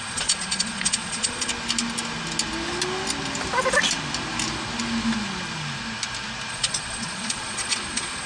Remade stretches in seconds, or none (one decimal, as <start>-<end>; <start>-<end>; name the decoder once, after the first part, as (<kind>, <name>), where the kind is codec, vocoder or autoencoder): 0.0-1.5 (vocoder, Vocos); 6.5-8.3